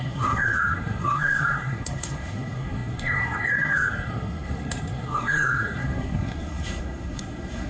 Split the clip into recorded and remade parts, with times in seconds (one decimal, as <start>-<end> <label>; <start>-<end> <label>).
0.0-7.7 remade